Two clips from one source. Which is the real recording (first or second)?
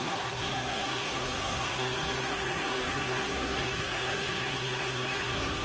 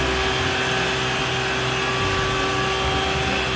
second